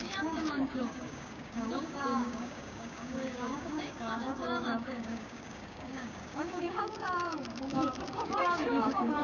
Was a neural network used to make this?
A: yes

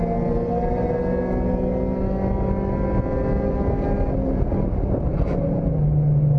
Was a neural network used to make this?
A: no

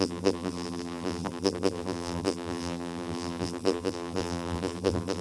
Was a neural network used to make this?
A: yes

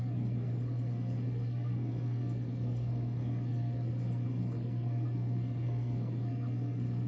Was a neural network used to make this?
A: yes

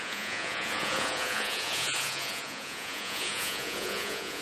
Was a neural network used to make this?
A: yes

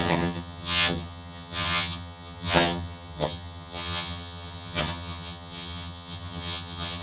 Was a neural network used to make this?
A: yes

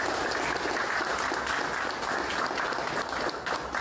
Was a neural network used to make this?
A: no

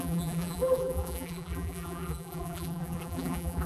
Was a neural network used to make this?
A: yes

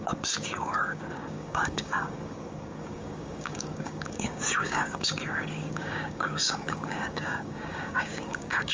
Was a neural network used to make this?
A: yes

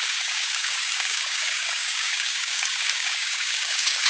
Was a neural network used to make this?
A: yes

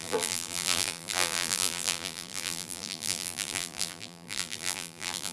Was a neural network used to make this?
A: yes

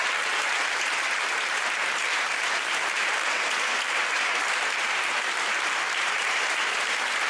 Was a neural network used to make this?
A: yes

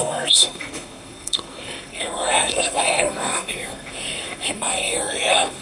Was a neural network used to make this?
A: yes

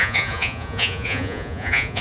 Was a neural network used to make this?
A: yes